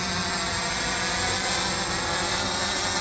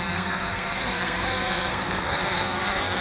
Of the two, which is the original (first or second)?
first